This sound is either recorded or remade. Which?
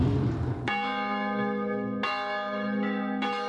recorded